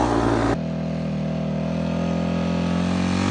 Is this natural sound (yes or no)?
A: yes